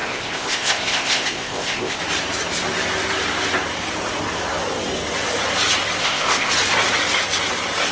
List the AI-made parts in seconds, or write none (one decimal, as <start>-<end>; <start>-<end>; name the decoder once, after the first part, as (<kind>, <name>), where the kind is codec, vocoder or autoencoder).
0.0-2.0 (codec, ZipCodec); 6.0-6.5